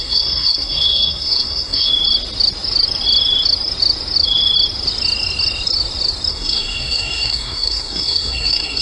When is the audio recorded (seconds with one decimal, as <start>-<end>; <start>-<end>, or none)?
1.9-6.3